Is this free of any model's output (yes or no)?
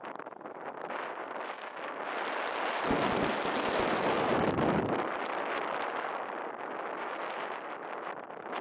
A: yes